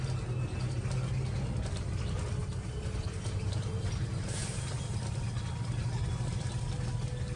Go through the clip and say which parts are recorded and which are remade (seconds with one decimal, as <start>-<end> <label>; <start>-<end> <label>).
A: 0.0-2.4 recorded; 2.4-4.6 remade; 4.6-7.4 recorded